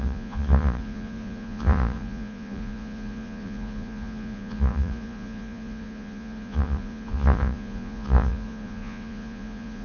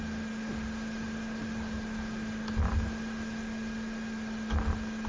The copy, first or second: first